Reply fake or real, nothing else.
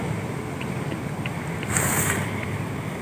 real